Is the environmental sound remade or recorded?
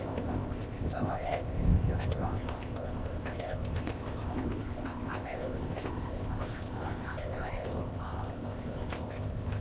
remade